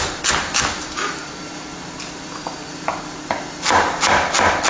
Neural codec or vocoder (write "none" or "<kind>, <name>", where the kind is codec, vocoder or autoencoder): none